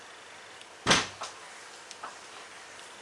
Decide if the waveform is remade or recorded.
recorded